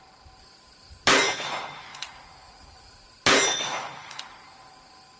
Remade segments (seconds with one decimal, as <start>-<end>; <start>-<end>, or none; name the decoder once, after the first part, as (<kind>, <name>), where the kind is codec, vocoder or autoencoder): 1.9-3.0 (vocoder, Vocos); 3.5-4.2